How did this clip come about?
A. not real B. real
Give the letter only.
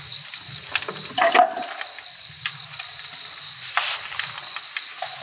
B